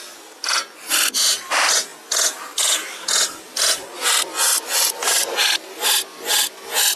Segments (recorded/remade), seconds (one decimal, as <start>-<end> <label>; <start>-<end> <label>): 0.0-7.0 recorded